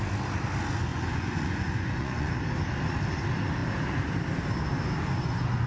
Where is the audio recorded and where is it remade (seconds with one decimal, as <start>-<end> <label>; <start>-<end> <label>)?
0.0-0.9 recorded; 0.9-2.3 remade; 2.3-5.7 recorded